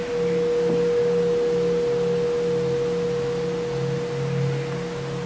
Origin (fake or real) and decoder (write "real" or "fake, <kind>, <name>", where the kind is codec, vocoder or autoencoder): real